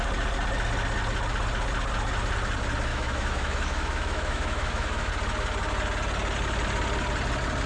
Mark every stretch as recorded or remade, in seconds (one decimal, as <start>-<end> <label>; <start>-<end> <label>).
0.0-2.9 recorded; 2.9-5.1 remade; 5.1-7.7 recorded

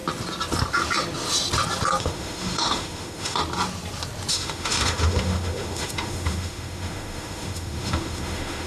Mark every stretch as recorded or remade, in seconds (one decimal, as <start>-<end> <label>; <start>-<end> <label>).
0.0-2.0 recorded; 2.0-3.4 remade; 3.4-4.3 recorded; 4.3-8.7 remade

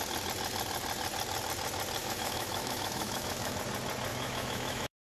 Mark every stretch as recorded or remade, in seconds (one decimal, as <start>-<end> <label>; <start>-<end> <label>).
0.0-2.0 recorded; 2.0-3.6 remade; 3.6-4.1 recorded; 4.1-5.1 remade

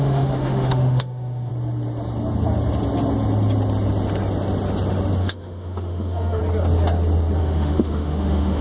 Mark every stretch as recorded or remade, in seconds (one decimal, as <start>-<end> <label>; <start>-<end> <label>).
0.0-1.5 remade; 1.5-5.2 recorded; 5.2-6.4 remade; 6.4-7.4 recorded; 7.4-8.6 remade

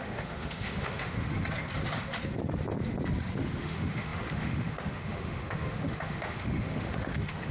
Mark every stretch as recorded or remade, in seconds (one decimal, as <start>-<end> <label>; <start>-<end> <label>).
0.0-1.3 remade; 1.3-3.4 recorded; 3.4-7.5 remade

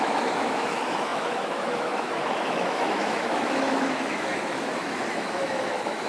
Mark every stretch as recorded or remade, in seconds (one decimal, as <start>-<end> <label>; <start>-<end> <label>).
0.0-6.1 remade

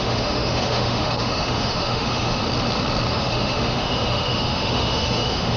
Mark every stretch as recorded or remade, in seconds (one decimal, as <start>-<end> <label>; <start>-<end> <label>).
0.0-2.4 remade; 2.4-3.1 recorded; 3.1-5.6 remade

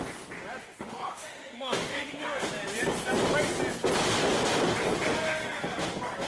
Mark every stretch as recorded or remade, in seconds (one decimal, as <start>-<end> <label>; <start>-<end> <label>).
0.0-0.6 recorded; 0.6-2.5 remade; 2.5-6.3 recorded